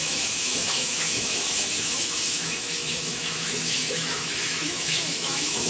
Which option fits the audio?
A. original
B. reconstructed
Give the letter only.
B